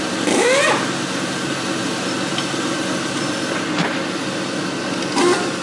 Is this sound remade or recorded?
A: recorded